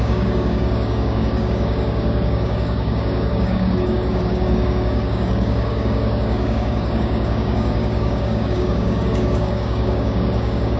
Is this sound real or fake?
fake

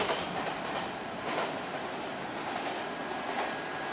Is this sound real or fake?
real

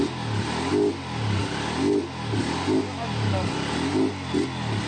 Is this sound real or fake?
real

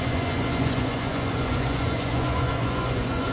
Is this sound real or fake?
fake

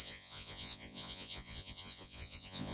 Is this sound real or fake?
fake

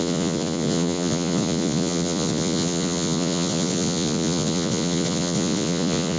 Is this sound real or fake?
fake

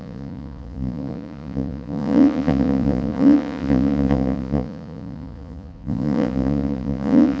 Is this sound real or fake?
fake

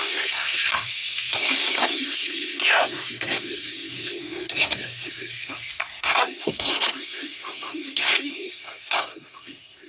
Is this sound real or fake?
fake